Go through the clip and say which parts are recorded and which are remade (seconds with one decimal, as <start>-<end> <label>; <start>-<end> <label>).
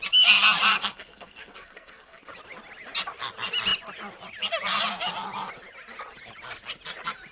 0.0-0.7 recorded; 0.7-2.3 remade; 2.3-7.3 recorded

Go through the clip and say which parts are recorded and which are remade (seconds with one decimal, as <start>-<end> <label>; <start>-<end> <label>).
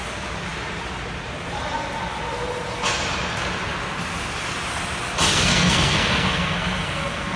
0.0-5.3 recorded; 5.3-7.4 remade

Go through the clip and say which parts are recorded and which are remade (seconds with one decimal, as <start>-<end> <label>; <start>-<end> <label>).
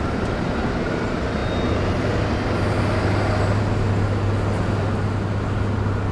0.0-6.1 recorded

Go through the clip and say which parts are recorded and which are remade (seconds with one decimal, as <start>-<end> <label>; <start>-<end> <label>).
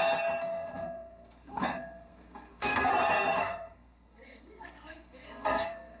0.0-0.4 recorded; 0.4-2.9 remade; 2.9-3.4 recorded; 3.4-6.0 remade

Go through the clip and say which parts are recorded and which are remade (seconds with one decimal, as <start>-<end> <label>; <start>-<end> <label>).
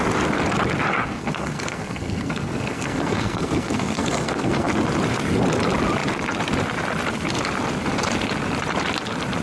0.0-1.0 recorded; 1.0-4.7 remade; 4.7-9.4 recorded